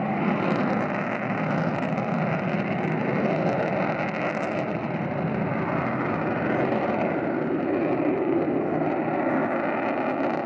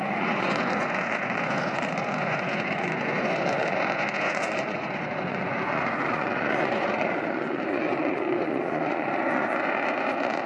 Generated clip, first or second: second